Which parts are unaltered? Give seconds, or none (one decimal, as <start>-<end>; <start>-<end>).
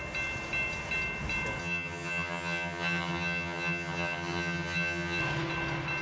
0.0-1.6; 5.2-6.0